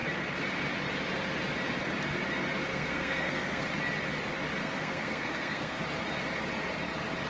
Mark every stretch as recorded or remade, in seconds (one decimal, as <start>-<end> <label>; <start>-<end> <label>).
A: 0.0-2.7 recorded; 2.7-3.6 remade; 3.6-4.6 recorded; 4.6-5.8 remade; 5.8-7.3 recorded